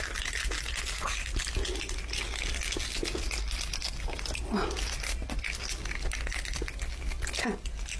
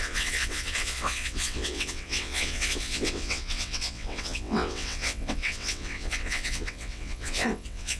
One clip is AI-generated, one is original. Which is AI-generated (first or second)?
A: second